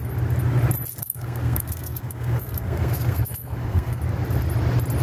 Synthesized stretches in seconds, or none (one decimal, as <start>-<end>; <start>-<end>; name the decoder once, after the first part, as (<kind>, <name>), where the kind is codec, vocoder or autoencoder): 1.0-4.0 (codec, SNAC)